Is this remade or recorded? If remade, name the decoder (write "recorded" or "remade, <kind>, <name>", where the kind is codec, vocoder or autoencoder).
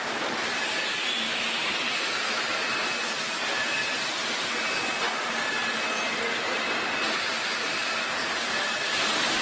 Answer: recorded